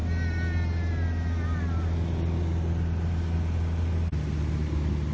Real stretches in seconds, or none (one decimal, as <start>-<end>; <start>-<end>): 0.0-5.1